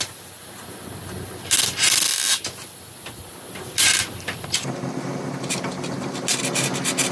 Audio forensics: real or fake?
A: real